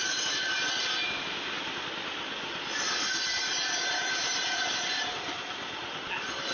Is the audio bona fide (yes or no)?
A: yes